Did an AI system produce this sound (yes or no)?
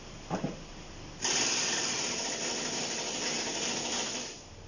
no